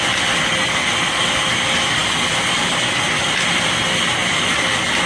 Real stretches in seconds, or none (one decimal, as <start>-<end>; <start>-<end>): 0.0-5.1